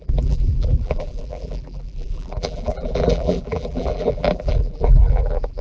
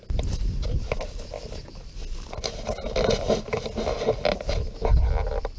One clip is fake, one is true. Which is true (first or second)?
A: second